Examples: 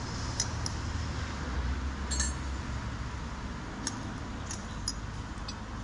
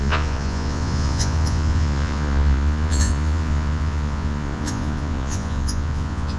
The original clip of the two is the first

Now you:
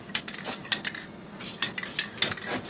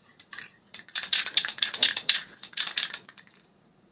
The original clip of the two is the first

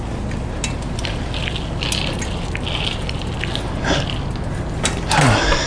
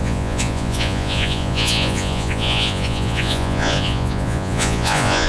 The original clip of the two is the first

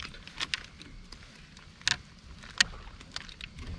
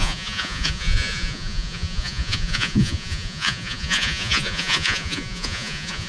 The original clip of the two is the first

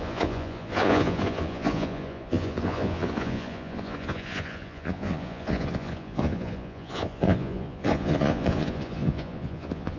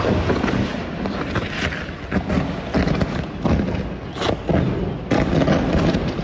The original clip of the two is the second